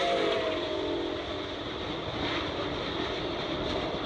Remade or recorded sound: recorded